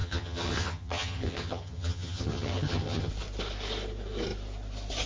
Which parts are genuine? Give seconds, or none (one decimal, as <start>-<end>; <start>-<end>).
3.1-5.1